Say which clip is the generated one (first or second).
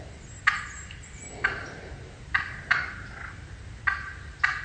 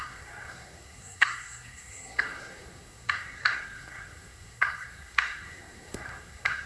second